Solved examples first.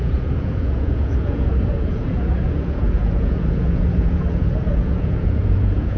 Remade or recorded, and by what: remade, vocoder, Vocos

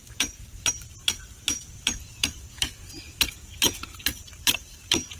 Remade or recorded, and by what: remade, vocoder, BigVGAN v2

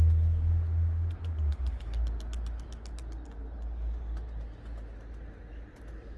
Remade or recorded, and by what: recorded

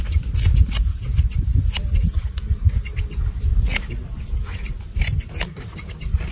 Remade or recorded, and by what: recorded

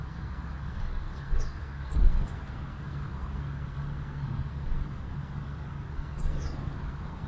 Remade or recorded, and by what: remade, codec, SNAC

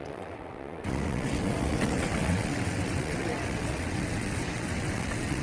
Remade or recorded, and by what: remade, vocoder, WaveNeXt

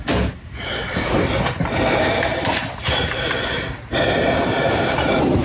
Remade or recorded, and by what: remade, vocoder, BigVGAN v2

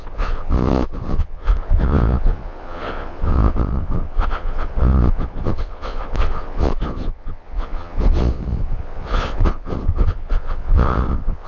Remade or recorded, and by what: remade, vocoder, Vocos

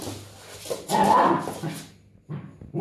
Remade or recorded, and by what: recorded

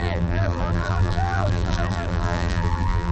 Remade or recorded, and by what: remade, vocoder, BigVGAN v2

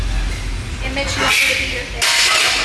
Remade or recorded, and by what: recorded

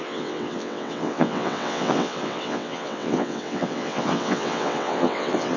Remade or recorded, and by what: remade, vocoder, WaveNeXt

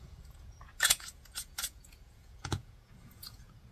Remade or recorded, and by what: remade, vocoder, Vocos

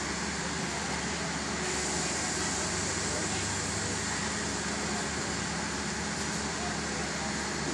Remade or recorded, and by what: recorded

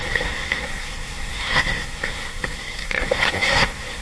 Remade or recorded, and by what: remade, codec, SNAC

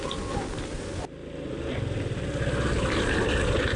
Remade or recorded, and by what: recorded